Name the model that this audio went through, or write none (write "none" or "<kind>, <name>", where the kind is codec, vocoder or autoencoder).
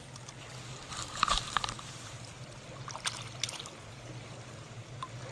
none